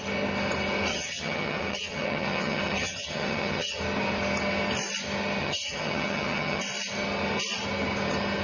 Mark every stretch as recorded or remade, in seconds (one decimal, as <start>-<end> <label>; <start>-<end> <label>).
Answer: 0.0-0.9 recorded; 0.9-3.8 remade; 3.8-5.4 recorded; 5.4-6.6 remade; 6.6-8.4 recorded